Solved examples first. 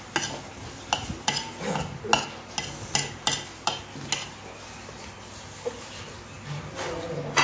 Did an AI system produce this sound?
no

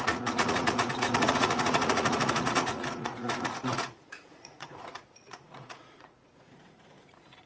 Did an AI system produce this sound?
yes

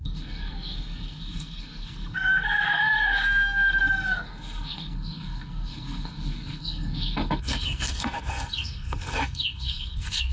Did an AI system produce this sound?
yes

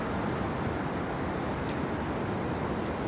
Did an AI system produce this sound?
no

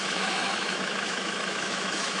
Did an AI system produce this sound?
yes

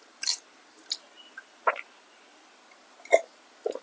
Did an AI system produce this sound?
no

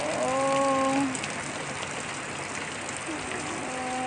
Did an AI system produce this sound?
no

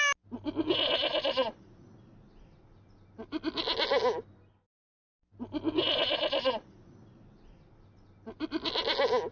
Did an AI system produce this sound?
no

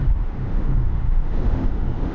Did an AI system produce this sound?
yes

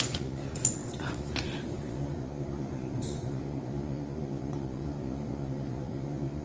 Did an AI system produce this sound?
yes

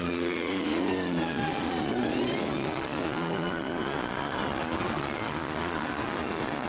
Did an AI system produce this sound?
yes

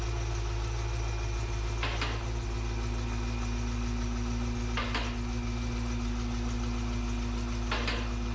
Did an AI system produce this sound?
no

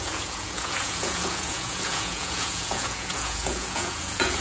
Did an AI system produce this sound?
yes